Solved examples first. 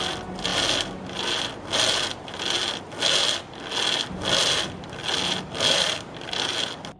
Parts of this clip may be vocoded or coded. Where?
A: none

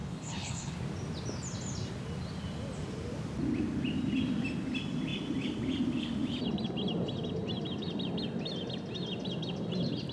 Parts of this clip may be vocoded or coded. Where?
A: 0.0-0.8 (codec, HILCodec)

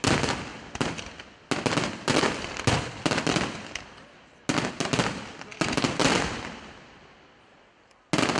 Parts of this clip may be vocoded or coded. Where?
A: none

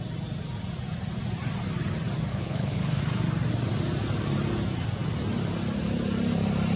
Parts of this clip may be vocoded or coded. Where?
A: 2.3-3.0 (codec, HILCodec)

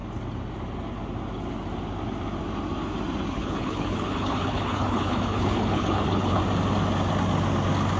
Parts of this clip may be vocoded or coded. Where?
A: 3.3-6.4 (codec, HILCodec)

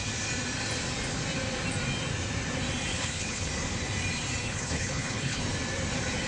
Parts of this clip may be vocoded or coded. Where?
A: 2.9-3.5 (codec, HILCodec); 4.4-5.4